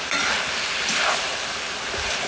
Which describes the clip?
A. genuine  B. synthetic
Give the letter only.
A